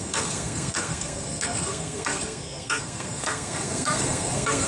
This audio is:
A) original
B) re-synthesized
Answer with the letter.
B